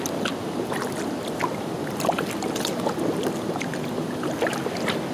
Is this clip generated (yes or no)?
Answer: no